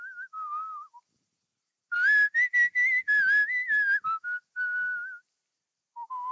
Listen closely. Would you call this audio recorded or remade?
recorded